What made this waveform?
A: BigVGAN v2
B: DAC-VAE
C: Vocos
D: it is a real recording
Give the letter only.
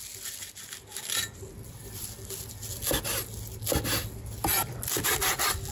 D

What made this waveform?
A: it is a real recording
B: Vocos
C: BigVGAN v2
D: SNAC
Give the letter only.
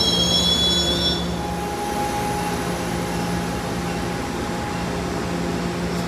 A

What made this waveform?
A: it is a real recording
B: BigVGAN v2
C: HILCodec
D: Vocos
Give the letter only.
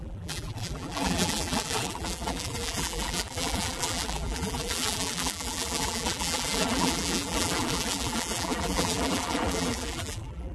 B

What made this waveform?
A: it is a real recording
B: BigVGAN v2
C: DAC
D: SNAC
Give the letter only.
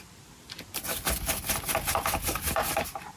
A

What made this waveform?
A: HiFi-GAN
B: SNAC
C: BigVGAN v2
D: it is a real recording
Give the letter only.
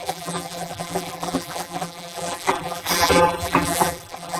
C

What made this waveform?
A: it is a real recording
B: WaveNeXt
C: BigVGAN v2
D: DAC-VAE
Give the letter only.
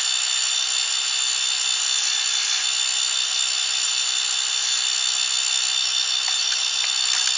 A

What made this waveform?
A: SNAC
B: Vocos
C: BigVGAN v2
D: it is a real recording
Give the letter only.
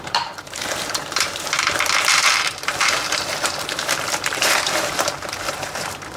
C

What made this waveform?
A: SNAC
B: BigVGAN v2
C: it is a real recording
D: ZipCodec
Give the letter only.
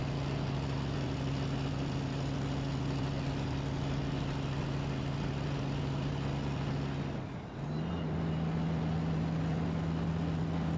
C